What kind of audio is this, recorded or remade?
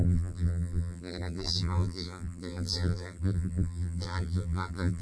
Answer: remade